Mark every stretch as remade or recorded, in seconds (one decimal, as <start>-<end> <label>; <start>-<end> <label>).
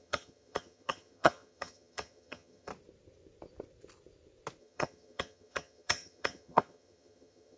0.0-2.7 remade; 2.7-4.6 recorded; 4.6-7.6 remade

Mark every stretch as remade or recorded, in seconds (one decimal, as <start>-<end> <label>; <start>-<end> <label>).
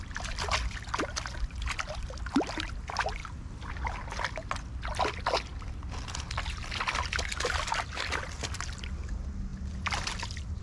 0.0-10.6 recorded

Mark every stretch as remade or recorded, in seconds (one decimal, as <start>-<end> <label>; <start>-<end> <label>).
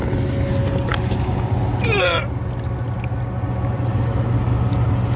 0.0-0.9 recorded; 0.9-1.5 remade; 1.5-5.2 recorded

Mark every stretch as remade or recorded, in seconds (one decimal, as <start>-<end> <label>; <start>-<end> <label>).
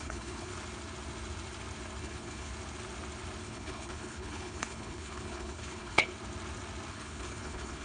0.0-0.5 remade; 0.5-2.0 recorded; 2.0-2.5 remade; 2.5-3.4 recorded; 3.4-6.1 remade; 6.1-6.9 recorded; 6.9-7.8 remade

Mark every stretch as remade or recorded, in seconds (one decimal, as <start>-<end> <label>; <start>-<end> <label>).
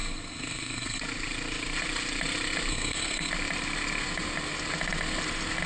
0.0-1.0 remade; 1.0-2.7 recorded; 2.7-3.3 remade; 3.3-5.7 recorded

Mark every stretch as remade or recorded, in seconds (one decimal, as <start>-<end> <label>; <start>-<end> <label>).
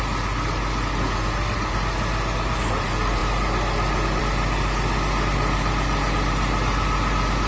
0.0-7.5 recorded